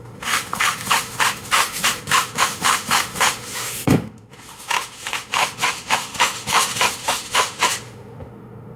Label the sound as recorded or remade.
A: remade